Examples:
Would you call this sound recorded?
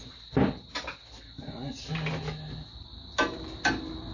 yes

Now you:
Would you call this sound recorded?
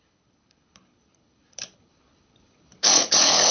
no